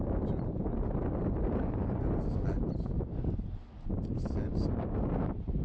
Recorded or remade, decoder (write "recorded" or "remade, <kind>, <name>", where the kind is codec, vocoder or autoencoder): recorded